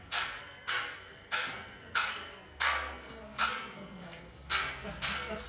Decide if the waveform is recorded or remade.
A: remade